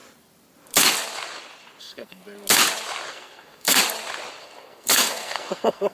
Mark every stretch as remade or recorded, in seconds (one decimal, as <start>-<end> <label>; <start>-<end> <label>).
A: 0.0-1.8 recorded; 1.8-2.2 remade; 2.2-3.1 recorded; 3.1-3.8 remade; 3.8-4.4 recorded; 4.4-5.9 remade